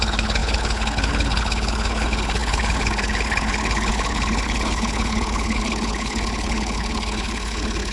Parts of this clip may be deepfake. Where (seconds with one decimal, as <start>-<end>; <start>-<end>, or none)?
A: 0.0-7.9

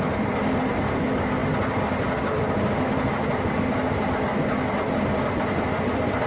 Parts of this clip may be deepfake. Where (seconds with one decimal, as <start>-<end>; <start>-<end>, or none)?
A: none

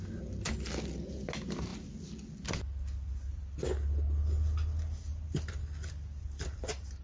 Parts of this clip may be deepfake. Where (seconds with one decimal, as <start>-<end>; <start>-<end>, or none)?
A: none

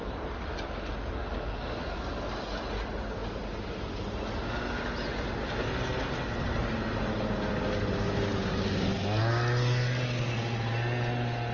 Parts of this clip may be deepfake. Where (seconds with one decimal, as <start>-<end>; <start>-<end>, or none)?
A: none

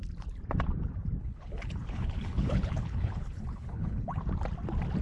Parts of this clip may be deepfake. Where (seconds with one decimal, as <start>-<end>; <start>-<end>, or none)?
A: 1.2-4.2